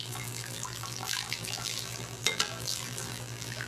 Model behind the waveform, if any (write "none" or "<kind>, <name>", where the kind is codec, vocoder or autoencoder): vocoder, BigVGAN v2